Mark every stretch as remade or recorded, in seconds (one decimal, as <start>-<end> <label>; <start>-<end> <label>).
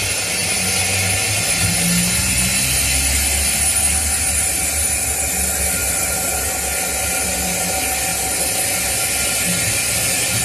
0.0-5.8 recorded; 5.8-6.3 remade; 6.3-10.4 recorded